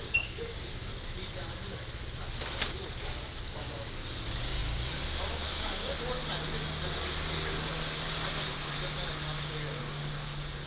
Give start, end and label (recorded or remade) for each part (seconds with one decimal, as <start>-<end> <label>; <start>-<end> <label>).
0.0-0.9 remade; 0.9-3.6 recorded; 3.6-6.2 remade; 6.2-9.8 recorded; 9.8-10.7 remade